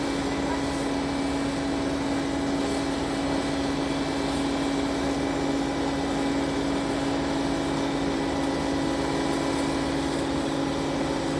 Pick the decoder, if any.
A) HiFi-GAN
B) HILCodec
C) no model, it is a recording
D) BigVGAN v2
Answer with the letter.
C